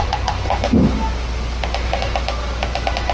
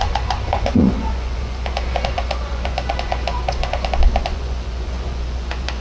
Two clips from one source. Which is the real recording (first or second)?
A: first